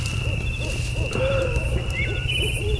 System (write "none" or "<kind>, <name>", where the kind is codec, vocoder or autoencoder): vocoder, BigVGAN v2